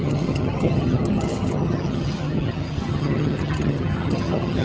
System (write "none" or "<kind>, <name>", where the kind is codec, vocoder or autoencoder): vocoder, HiFi-GAN